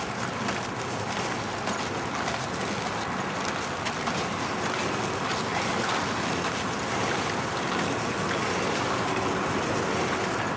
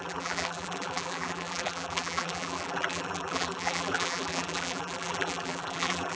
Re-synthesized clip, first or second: second